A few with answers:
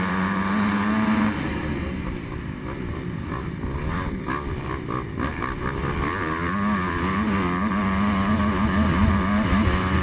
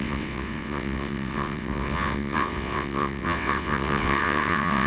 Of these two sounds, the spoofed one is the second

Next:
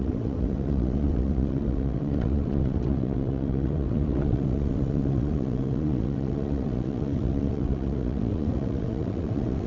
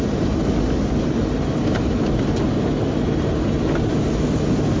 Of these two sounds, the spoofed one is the first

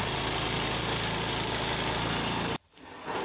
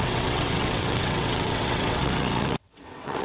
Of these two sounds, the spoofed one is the second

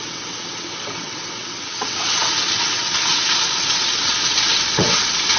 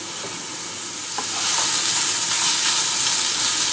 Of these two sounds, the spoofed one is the first